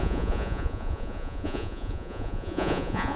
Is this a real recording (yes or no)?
no